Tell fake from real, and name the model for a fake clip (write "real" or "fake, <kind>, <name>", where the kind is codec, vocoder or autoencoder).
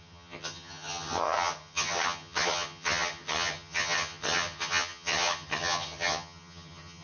fake, vocoder, HiFi-GAN